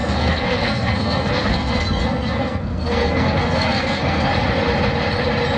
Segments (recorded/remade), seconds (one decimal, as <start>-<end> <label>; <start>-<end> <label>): 0.0-4.3 remade; 4.3-5.6 recorded